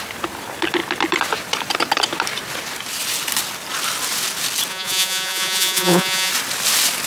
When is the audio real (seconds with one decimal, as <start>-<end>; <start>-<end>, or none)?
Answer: 0.0-4.7; 6.3-7.1

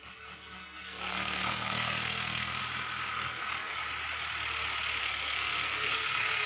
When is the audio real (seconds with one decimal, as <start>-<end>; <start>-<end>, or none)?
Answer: 2.6-3.1; 3.8-5.0

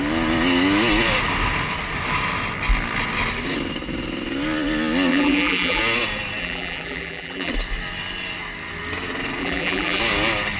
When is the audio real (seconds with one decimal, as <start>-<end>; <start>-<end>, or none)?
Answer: 0.0-5.1; 5.8-6.4; 7.5-9.4; 10.0-10.6

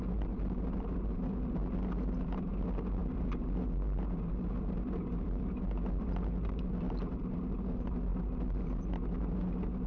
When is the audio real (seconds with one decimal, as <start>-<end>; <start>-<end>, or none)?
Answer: 0.0-9.9

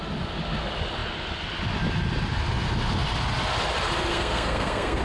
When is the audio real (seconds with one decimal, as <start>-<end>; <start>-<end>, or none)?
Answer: 0.0-4.1

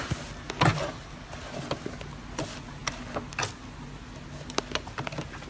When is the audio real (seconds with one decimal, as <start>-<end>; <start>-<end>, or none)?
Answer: 0.0-5.5

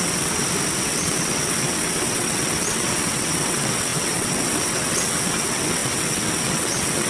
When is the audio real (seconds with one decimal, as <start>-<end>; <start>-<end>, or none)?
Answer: 0.4-0.9